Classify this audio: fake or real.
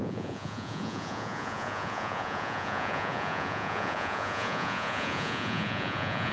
fake